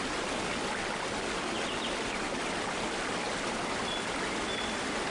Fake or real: real